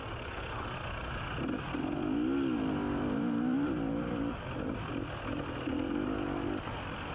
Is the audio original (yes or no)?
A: yes